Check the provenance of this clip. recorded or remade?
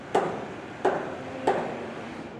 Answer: recorded